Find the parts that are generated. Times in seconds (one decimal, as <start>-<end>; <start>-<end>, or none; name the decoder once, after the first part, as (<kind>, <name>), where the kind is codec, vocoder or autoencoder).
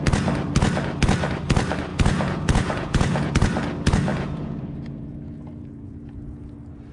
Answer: 1.9-3.3 (vocoder, Vocos); 4.1-6.5